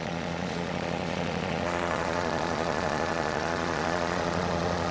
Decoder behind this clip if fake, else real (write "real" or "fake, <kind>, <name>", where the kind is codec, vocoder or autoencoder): fake, vocoder, Vocos